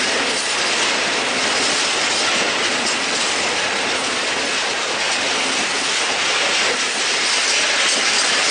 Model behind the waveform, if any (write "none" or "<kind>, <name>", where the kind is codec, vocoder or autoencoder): none